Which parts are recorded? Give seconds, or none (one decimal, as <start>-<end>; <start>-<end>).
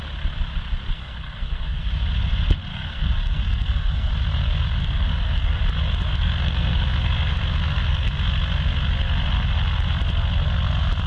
0.0-0.9; 1.9-2.7; 4.1-4.8; 5.6-6.1; 8.1-11.1